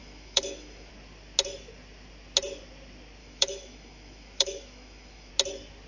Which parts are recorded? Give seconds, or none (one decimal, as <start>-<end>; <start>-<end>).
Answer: 0.9-3.2; 5.3-5.9